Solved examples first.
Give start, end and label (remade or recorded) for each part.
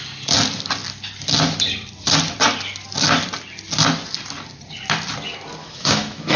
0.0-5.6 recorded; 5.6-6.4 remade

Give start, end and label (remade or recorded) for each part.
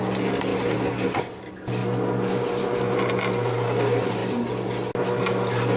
0.0-5.8 recorded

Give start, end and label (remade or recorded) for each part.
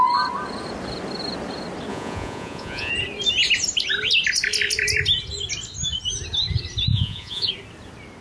0.0-1.9 recorded; 1.9-2.9 remade; 2.9-6.9 recorded; 6.9-7.5 remade; 7.5-8.2 recorded